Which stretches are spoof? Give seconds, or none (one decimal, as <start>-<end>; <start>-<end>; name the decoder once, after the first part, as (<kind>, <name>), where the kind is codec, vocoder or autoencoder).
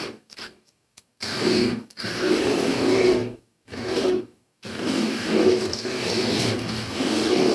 0.0-7.5 (codec, DAC)